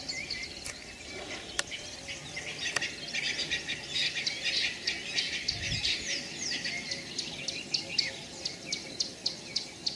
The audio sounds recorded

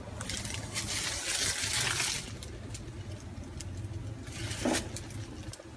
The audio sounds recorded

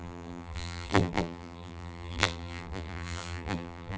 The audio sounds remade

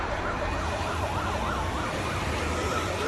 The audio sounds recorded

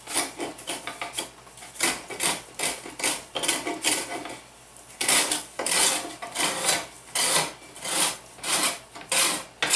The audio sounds recorded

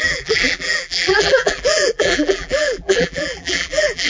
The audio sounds remade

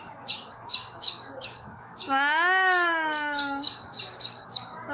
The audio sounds remade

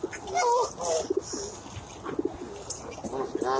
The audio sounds recorded